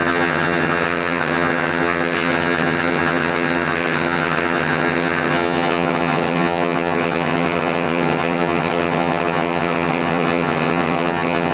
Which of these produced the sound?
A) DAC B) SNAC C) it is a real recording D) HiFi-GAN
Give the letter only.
D